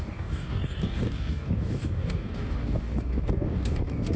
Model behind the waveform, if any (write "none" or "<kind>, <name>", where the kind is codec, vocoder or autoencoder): codec, DAC